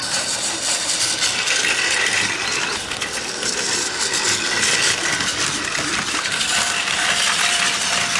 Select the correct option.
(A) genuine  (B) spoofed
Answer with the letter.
B